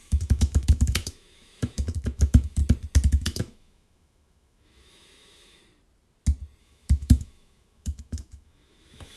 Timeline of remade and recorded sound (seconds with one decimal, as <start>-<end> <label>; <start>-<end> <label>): 0.0-2.6 remade; 2.6-3.1 recorded; 3.1-5.6 remade; 5.6-6.6 recorded; 6.6-9.2 remade